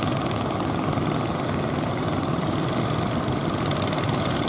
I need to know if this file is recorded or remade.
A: recorded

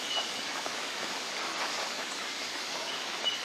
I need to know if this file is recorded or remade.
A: remade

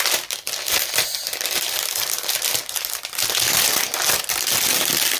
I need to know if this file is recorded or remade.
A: recorded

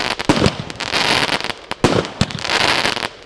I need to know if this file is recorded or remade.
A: recorded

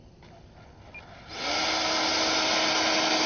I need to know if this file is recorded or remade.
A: recorded